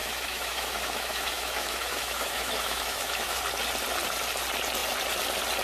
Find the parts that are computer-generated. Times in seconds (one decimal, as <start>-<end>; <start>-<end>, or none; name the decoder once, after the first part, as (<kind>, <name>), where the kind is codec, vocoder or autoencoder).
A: 0.0-3.4 (autoencoder, DAC-VAE)